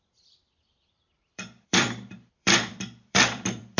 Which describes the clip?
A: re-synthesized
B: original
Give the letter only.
A